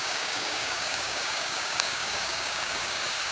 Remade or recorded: remade